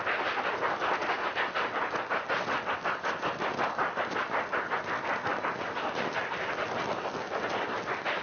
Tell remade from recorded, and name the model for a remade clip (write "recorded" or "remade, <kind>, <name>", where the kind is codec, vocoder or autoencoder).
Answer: recorded